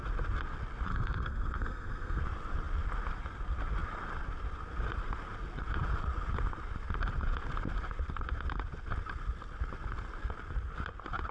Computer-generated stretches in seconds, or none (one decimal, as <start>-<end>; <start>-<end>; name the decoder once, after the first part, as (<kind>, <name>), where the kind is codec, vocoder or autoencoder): 0.9-2.2 (codec, SNAC)